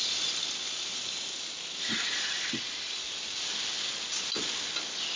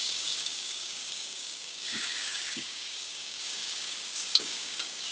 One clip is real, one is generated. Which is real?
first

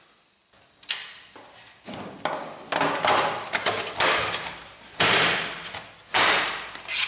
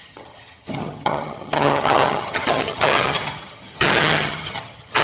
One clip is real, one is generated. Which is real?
first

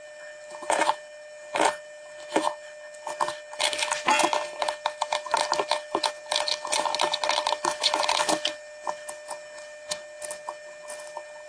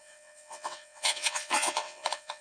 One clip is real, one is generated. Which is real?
first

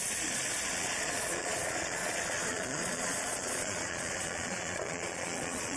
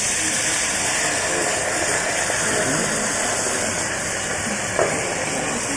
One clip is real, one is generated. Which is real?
second